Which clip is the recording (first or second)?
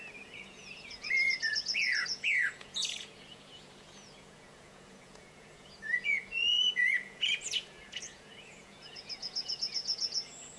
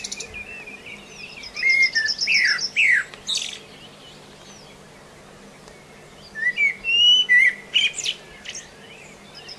second